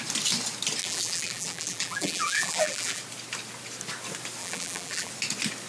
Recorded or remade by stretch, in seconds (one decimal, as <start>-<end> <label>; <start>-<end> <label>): 0.0-0.8 recorded; 0.8-3.0 remade; 3.0-4.4 recorded; 4.4-5.1 remade; 5.1-5.7 recorded